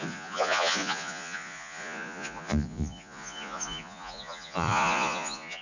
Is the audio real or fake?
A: fake